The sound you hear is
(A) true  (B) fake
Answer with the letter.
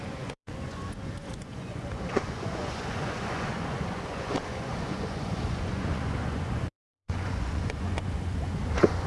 B